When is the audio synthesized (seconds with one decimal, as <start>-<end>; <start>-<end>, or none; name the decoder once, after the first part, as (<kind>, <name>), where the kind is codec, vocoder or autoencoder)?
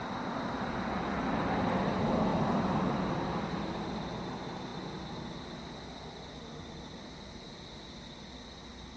none